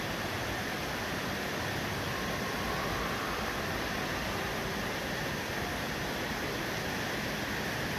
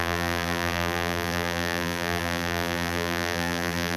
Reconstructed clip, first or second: second